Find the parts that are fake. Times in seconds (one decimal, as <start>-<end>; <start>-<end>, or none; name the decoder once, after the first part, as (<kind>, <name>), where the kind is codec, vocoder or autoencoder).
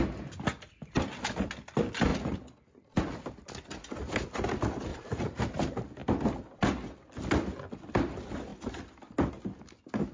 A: 4.9-5.4 (vocoder, Vocos)